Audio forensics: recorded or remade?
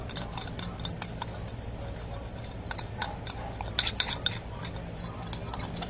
recorded